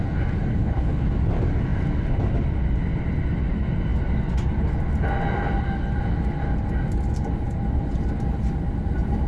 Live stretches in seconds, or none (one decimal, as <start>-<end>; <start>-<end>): 0.0-0.5; 1.0-9.3